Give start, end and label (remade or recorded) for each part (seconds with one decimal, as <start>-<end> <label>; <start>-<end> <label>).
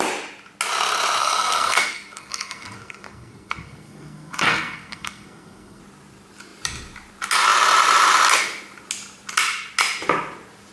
0.0-1.2 recorded; 1.2-5.8 remade; 5.8-10.7 recorded